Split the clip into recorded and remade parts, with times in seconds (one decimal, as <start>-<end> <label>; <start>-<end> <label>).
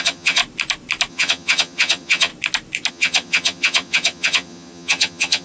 0.0-0.4 remade; 0.4-1.1 recorded; 1.1-2.3 remade; 2.3-2.9 recorded; 2.9-5.4 remade